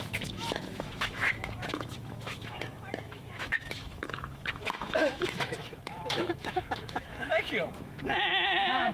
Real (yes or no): no